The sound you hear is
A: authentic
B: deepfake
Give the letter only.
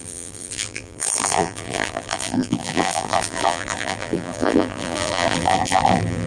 B